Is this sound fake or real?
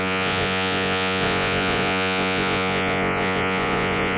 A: fake